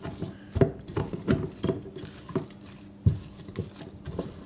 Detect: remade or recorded recorded